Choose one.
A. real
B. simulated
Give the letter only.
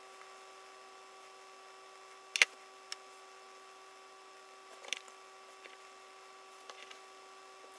A